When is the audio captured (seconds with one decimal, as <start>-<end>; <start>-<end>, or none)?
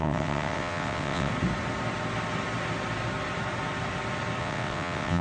1.3-4.4